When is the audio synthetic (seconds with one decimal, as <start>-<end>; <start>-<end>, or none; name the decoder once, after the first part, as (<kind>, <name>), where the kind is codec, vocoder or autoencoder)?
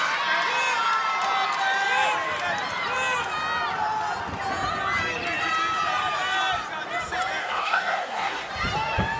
7.4-8.5 (codec, SNAC)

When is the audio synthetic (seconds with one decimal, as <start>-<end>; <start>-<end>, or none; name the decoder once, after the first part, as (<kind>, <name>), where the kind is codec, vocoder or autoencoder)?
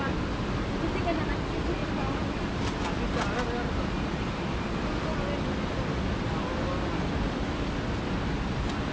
none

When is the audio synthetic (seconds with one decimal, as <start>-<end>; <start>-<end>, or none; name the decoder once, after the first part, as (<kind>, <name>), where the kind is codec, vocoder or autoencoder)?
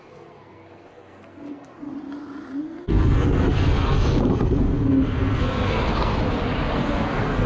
0.0-1.9 (codec, SNAC); 2.6-6.1; 6.7-7.5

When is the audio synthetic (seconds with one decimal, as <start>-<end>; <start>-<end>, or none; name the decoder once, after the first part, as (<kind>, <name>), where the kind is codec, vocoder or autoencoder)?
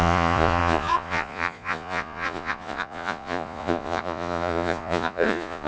0.0-5.7 (vocoder, Vocos)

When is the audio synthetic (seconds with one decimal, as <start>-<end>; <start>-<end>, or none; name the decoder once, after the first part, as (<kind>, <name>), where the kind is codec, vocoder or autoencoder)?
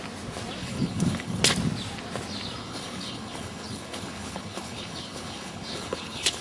0.6-1.4 (codec, HILCodec); 2.6-6.4